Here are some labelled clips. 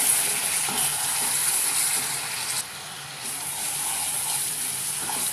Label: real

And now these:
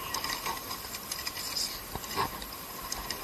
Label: real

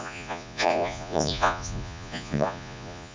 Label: fake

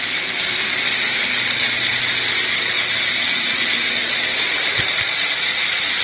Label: real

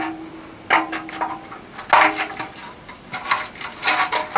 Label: real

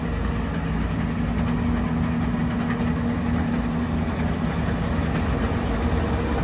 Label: real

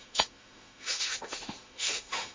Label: fake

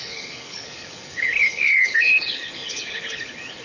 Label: fake